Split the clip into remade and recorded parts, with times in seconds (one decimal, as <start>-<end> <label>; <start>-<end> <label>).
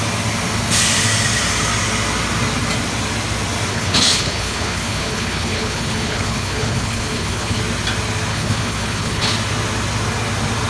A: 0.0-3.7 recorded; 3.7-7.6 remade; 7.6-8.3 recorded; 8.3-9.3 remade; 9.3-10.7 recorded